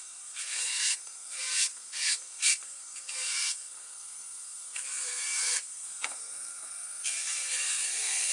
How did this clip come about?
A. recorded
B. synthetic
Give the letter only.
B